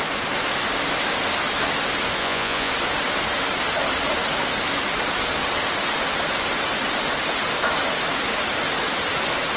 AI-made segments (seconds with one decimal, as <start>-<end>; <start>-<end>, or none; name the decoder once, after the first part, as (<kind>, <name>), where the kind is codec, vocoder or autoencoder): 2.2-2.7 (vocoder, Vocos)